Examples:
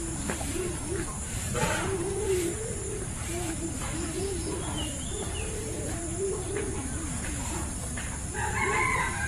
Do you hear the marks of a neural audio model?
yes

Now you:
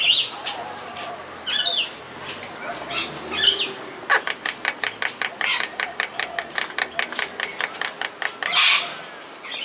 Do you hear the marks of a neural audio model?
no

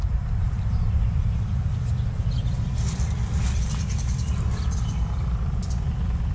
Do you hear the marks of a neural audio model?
yes